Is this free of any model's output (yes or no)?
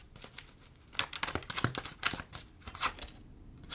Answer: yes